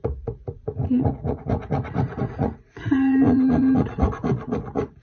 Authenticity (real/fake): fake